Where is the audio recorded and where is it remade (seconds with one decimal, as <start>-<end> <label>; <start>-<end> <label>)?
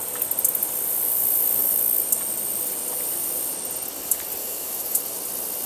0.0-4.4 recorded; 4.4-5.0 remade; 5.0-5.7 recorded